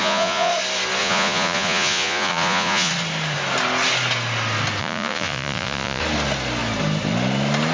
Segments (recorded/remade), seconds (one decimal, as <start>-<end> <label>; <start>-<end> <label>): 0.0-0.5 remade; 0.5-1.0 recorded; 1.0-2.9 remade; 2.9-4.8 recorded; 4.8-6.0 remade; 6.0-7.7 recorded